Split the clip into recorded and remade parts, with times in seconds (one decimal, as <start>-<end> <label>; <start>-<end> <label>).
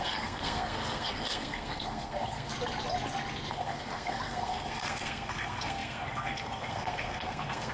0.0-2.5 remade; 2.5-3.5 recorded; 3.5-7.7 remade